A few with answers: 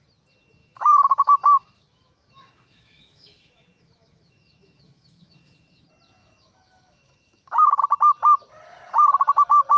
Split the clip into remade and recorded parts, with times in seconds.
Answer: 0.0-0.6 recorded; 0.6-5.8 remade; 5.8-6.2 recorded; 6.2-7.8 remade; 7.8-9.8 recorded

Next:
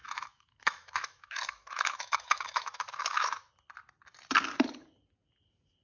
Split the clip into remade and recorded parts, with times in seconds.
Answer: 0.0-3.5 remade; 3.5-5.8 recorded

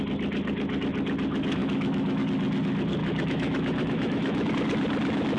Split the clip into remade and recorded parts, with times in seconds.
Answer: 0.0-1.6 recorded; 1.6-2.2 remade; 2.2-3.0 recorded; 3.0-4.5 remade; 4.5-5.4 recorded

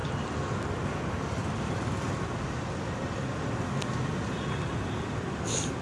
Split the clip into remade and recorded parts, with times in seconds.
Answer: 0.0-5.8 recorded

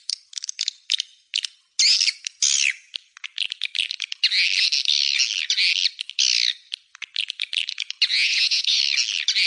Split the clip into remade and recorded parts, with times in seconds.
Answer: 0.0-8.1 recorded; 8.1-8.8 remade; 8.8-9.5 recorded

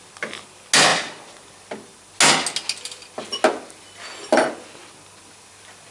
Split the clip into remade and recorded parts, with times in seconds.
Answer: 0.0-5.9 recorded

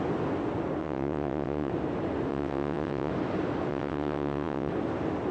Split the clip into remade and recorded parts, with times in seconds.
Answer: 0.0-0.8 recorded; 0.8-1.7 remade; 1.7-2.3 recorded; 2.3-3.1 remade; 3.1-3.7 recorded; 3.7-4.7 remade; 4.7-5.3 recorded